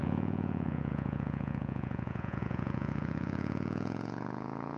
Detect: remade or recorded remade